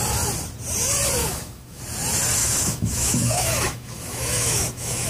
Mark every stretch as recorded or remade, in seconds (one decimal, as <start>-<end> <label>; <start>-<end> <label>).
0.0-1.2 recorded; 1.2-1.8 remade; 1.8-2.4 recorded; 2.4-5.1 remade